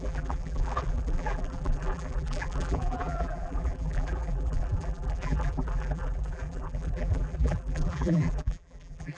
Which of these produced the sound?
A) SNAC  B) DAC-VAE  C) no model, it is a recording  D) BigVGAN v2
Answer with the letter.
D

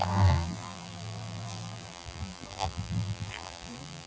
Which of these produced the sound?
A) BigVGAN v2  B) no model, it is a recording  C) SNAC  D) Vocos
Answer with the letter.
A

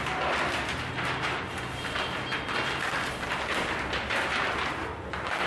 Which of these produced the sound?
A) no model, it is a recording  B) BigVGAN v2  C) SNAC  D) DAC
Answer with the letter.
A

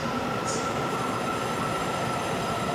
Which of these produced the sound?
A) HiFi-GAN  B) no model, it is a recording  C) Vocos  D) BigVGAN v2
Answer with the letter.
D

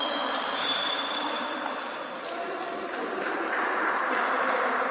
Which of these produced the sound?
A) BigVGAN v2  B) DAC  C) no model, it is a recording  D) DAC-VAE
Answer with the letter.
A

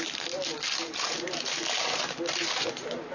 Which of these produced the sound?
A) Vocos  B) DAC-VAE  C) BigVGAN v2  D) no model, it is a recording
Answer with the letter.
C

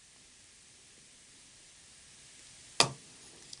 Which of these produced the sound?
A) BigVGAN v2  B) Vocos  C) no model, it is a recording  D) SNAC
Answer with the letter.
C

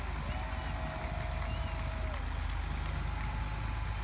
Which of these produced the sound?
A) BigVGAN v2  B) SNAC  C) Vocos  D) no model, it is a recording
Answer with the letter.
D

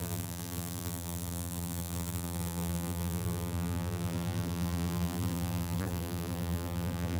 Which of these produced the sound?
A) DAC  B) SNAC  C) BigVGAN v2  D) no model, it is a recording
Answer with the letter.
C